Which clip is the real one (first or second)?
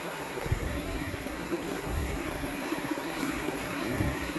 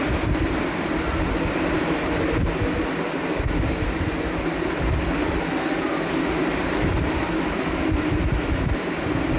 second